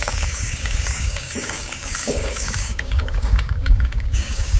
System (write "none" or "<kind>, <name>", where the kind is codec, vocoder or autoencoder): codec, DAC